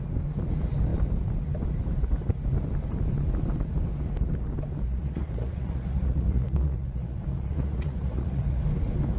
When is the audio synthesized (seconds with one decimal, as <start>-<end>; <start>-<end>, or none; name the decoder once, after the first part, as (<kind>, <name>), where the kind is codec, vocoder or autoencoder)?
4.9-8.6 (vocoder, Vocos)